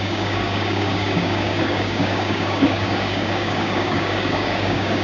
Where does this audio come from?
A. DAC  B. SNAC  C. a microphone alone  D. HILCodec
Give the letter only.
A